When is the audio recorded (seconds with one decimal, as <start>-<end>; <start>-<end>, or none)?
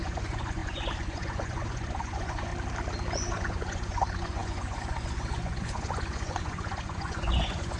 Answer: 2.5-3.3